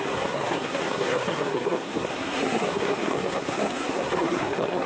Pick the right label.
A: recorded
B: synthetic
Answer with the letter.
B